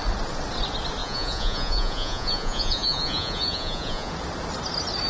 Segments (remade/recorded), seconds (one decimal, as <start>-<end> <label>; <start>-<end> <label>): 0.0-1.0 recorded; 1.0-4.1 remade; 4.1-5.1 recorded